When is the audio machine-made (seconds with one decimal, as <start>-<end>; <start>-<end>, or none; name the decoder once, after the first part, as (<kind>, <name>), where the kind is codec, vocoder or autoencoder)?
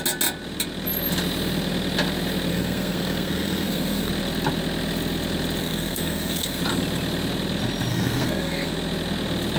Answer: 2.5-4.1 (codec, SNAC); 5.6-6.6; 7.9-8.7